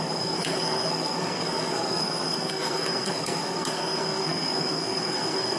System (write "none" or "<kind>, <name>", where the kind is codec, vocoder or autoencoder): codec, SNAC